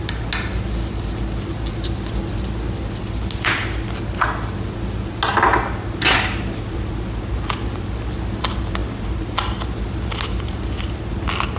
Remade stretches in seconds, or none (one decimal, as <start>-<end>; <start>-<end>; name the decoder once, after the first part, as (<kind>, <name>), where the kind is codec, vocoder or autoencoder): none

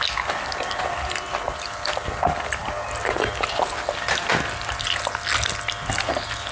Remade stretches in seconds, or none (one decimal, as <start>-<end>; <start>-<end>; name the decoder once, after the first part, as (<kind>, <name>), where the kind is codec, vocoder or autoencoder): none

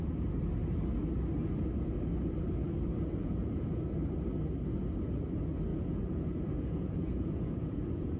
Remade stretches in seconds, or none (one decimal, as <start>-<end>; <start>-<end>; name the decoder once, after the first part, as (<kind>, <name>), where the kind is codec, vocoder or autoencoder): 3.2-3.8 (vocoder, Vocos); 5.7-8.2

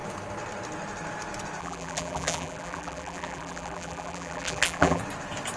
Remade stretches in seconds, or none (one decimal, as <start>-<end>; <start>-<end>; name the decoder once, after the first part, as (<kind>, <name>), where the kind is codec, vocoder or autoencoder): 1.6-5.0 (vocoder, BigVGAN v2)

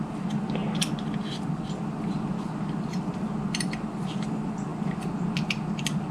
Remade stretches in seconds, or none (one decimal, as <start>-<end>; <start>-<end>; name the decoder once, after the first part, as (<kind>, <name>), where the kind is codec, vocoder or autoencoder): none

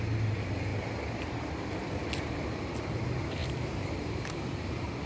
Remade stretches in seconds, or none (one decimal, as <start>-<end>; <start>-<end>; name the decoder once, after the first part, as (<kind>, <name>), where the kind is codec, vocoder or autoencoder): 0.7-1.8 (vocoder, BigVGAN v2); 3.4-4.6

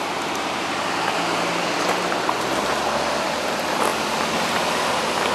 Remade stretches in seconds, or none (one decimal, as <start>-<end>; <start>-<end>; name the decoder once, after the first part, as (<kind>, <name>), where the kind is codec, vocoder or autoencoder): none